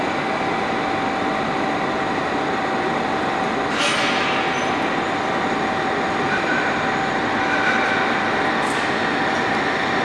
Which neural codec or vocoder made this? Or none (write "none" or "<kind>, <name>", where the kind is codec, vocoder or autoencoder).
none